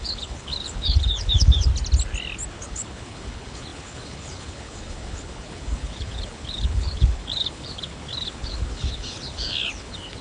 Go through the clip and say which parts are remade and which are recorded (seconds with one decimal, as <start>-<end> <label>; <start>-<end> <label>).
0.0-1.7 remade; 1.7-2.5 recorded; 2.5-10.2 remade